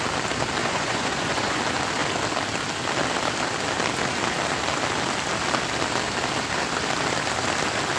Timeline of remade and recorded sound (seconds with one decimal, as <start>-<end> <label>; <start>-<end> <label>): 0.0-0.6 recorded; 0.6-1.6 remade; 1.6-8.0 recorded